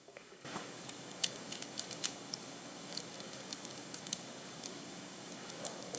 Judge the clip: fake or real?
fake